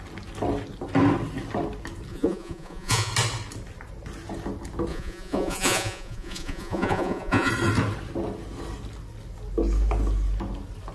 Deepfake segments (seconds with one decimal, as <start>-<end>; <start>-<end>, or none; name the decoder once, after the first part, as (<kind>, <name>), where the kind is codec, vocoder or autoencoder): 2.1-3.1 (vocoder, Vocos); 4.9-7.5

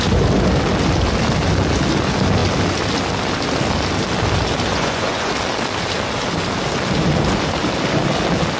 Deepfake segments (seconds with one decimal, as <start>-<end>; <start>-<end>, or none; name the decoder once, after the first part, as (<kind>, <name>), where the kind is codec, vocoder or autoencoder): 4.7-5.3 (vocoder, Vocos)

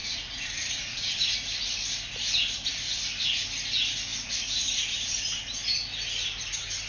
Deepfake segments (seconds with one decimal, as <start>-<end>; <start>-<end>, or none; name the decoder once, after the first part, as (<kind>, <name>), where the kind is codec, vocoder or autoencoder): 0.0-1.3 (vocoder, Vocos)